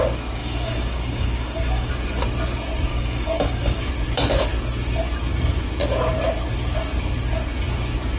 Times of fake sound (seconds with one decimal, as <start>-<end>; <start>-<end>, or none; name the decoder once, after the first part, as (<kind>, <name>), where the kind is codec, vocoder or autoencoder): 0.4-1.9 (codec, DAC); 2.9-3.9